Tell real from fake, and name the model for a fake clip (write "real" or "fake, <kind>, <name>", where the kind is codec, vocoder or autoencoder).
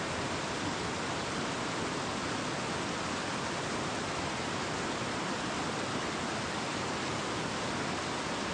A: real